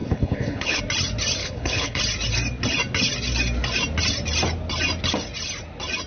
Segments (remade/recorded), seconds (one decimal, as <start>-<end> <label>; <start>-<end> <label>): 0.0-0.8 remade; 0.8-1.4 recorded; 1.4-2.0 remade; 2.0-6.1 recorded